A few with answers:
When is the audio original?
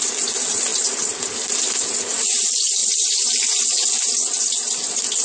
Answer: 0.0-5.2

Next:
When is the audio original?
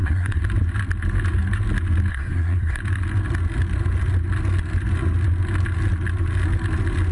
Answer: 0.4-2.1; 2.8-7.1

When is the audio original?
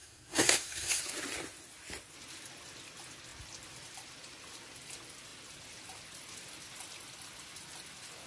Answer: 1.0-8.3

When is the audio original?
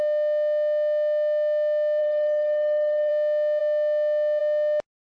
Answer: 0.0-2.0; 3.1-5.1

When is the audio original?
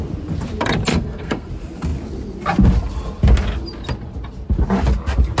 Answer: 0.0-0.9; 1.5-5.4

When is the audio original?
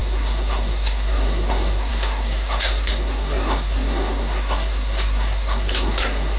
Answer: none